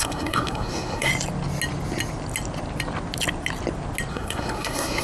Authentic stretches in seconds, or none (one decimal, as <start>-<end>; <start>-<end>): 1.1-4.1